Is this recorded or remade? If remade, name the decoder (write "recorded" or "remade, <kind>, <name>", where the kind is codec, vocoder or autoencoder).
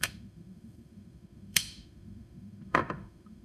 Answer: remade, autoencoder, DAC-VAE